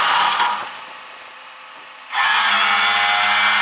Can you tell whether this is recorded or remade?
recorded